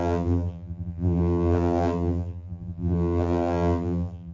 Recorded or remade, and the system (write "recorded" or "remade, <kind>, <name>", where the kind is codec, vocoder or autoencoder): remade, vocoder, BigVGAN v2